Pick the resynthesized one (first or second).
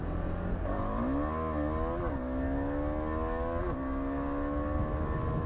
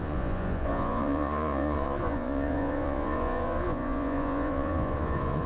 second